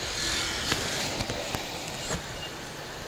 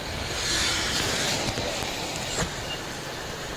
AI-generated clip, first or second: second